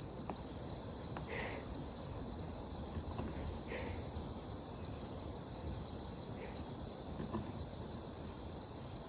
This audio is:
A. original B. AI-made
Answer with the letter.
A